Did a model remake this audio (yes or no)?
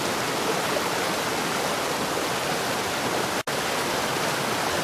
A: no